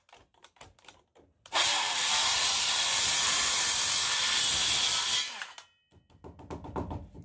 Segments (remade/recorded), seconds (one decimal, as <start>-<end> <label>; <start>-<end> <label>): 0.0-0.4 recorded; 0.4-4.2 remade; 4.2-7.2 recorded